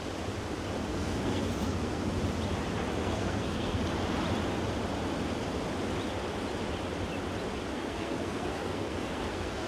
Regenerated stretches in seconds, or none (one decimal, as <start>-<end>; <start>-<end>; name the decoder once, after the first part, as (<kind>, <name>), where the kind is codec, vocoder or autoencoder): 0.9-2.2 (codec, SNAC); 3.0-3.8; 7.7-9.7